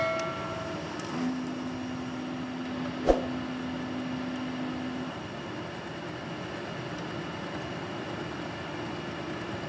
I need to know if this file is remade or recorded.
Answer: recorded